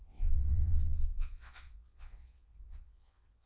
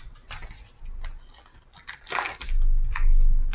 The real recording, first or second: second